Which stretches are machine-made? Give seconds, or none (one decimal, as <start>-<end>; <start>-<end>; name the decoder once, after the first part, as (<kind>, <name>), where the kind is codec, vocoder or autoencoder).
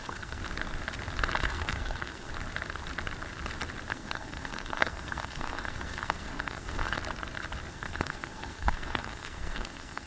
0.0-0.4 (codec, SNAC); 1.4-2.3; 3.9-7.0; 7.7-10.1